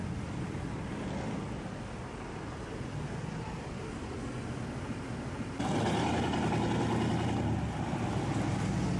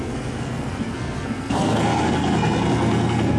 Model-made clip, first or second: second